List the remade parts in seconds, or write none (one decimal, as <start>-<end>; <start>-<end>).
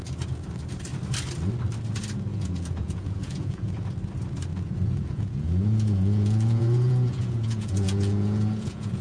2.3-3.8; 4.5-9.0